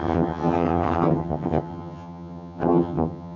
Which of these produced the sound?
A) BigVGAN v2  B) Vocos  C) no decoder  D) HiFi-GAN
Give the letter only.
D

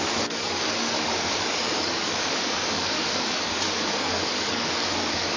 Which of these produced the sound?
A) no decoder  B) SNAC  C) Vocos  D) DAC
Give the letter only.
D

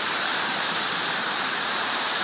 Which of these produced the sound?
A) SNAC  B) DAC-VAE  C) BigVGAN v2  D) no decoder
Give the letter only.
C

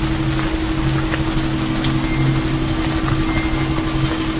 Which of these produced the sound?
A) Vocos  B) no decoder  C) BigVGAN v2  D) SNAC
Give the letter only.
B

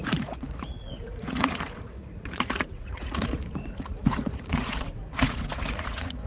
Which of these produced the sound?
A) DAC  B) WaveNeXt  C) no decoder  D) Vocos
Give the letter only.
D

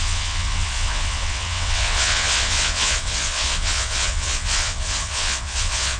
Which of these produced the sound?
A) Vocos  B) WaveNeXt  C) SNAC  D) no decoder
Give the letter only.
B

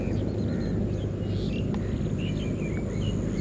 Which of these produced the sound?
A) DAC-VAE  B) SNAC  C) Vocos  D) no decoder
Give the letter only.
D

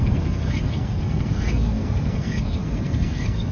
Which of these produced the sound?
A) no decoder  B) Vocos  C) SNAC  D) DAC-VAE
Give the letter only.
C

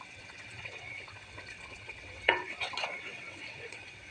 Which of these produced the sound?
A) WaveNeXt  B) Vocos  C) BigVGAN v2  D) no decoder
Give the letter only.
A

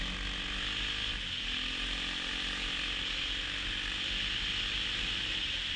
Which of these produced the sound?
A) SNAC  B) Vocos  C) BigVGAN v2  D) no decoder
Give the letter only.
D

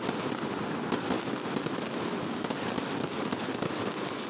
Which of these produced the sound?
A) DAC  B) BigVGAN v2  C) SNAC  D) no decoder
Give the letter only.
D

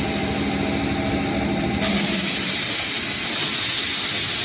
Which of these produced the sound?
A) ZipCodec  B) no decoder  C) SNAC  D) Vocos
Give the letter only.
B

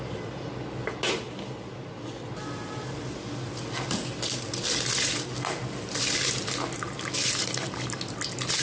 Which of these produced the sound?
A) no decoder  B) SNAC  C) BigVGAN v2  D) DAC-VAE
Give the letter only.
A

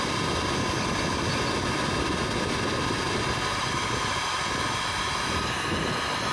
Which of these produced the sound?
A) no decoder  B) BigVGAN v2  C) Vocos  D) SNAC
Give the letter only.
A